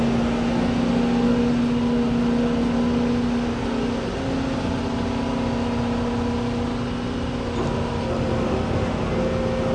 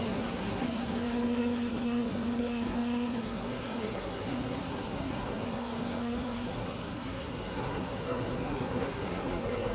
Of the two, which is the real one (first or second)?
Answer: first